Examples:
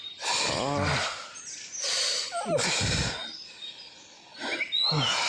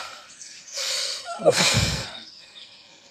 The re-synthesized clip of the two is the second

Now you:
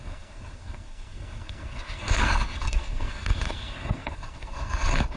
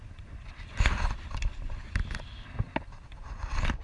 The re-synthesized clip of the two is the first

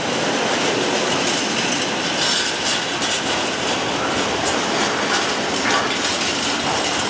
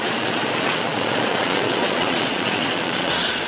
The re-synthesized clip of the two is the second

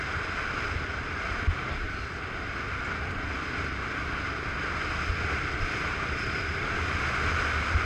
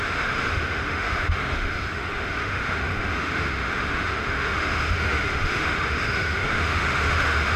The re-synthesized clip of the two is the second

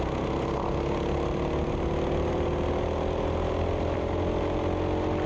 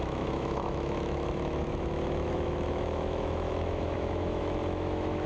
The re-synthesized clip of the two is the second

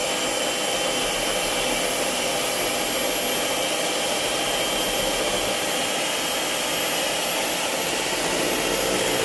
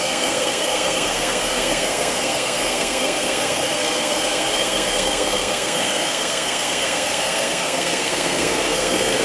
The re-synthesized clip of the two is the second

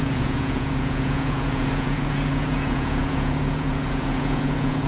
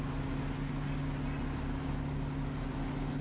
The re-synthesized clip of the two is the first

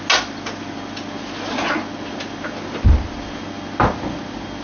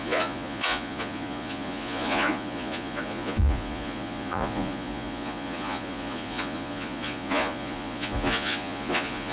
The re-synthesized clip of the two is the second